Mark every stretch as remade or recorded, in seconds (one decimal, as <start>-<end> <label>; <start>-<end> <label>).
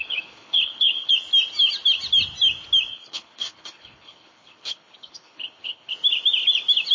0.0-1.1 remade; 1.1-2.9 recorded; 2.9-5.9 remade; 5.9-6.9 recorded